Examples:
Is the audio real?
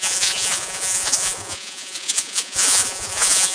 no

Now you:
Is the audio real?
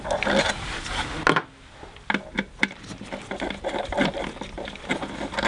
yes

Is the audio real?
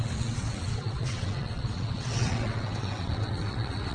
no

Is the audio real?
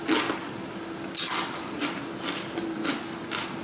yes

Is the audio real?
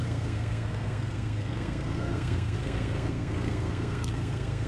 no